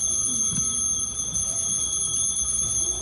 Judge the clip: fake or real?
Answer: real